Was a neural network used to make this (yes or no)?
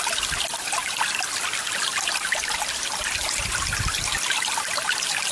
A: no